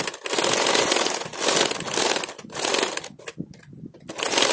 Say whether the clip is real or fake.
real